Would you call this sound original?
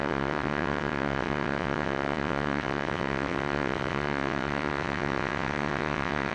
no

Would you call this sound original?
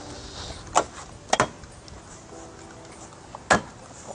yes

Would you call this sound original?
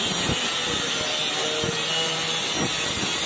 yes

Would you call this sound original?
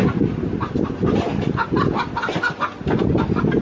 yes